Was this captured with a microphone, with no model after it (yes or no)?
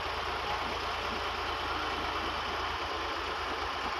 yes